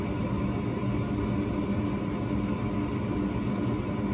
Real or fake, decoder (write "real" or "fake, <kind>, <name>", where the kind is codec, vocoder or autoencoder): real